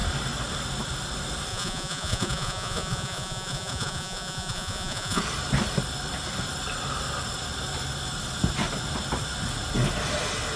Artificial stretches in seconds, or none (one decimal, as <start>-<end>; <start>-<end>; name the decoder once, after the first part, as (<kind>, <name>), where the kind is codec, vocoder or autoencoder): 1.5-5.2 (vocoder, Vocos)